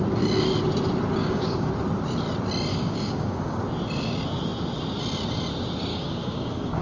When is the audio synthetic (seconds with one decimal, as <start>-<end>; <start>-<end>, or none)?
1.2-1.7; 2.7-3.6; 5.9-6.8